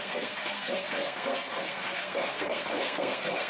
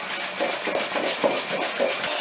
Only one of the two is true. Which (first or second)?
second